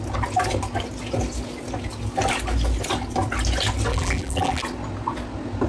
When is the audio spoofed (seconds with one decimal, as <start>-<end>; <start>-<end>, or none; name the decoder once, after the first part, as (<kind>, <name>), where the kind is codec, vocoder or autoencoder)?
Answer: 3.9-4.6 (vocoder, BigVGAN v2)